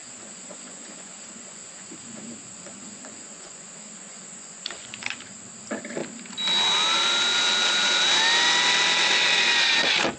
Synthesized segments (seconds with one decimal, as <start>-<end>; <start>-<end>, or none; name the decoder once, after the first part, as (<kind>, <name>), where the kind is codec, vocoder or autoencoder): 0.0-5.2 (vocoder, Vocos)